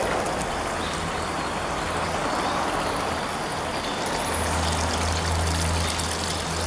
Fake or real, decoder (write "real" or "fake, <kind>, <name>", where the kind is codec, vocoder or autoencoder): real